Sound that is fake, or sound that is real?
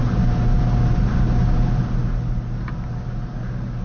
real